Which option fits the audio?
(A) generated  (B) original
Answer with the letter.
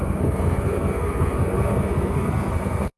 A